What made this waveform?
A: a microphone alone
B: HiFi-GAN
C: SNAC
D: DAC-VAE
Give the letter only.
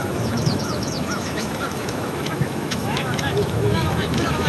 D